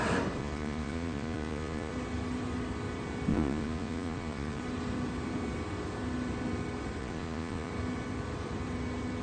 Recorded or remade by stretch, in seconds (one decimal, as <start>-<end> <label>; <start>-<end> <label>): 0.0-0.4 recorded; 0.4-1.9 remade; 1.9-3.3 recorded; 3.3-4.6 remade; 4.6-7.0 recorded; 7.0-7.7 remade; 7.7-9.2 recorded